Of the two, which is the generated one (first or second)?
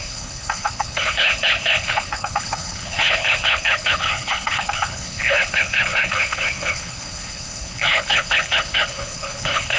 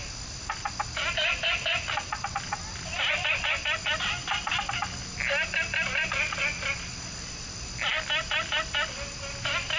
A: first